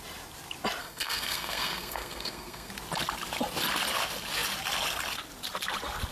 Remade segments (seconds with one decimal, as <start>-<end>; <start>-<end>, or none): 0.8-2.7